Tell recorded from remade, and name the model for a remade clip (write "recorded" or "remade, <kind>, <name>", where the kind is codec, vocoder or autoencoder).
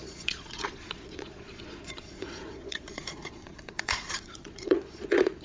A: remade, vocoder, Vocos